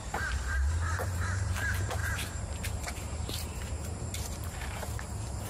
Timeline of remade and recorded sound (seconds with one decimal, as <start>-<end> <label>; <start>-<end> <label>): 0.0-5.5 remade